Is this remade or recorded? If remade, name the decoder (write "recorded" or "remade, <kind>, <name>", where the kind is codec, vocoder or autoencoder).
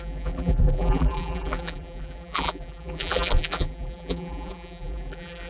remade, vocoder, BigVGAN v2